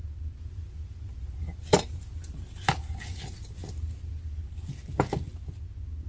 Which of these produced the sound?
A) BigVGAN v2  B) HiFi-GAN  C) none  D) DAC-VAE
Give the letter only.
C